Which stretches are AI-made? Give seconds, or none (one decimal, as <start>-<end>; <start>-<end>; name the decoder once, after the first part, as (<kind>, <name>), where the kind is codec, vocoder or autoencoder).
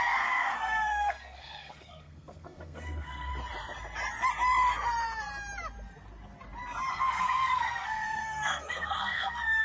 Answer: 0.0-3.3 (codec, SNAC); 6.9-9.6